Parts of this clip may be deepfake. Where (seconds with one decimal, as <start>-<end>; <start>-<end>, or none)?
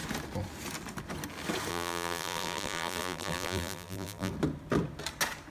1.7-4.3